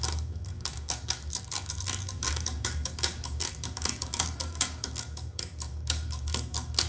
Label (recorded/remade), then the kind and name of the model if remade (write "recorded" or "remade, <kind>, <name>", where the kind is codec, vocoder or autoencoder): remade, codec, DAC